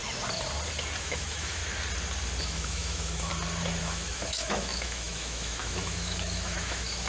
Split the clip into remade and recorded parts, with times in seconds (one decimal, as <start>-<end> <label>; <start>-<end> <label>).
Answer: 0.0-1.0 recorded; 1.0-1.6 remade; 1.6-2.4 recorded; 2.4-3.3 remade; 3.3-3.8 recorded; 3.8-7.1 remade